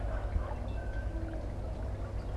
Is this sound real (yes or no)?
yes